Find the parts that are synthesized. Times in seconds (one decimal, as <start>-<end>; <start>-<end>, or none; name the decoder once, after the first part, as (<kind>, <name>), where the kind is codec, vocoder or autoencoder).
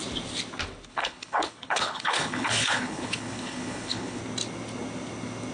0.9-4.2 (codec, HILCodec)